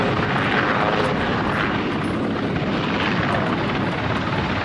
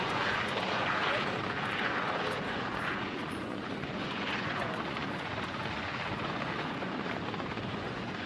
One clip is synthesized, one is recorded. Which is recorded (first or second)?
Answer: first